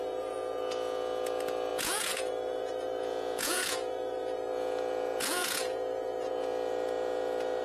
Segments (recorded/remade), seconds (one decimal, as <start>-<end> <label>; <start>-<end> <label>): 0.0-7.6 remade